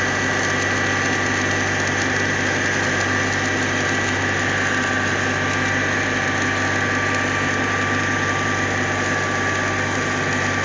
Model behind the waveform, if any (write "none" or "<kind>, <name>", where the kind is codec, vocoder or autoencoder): none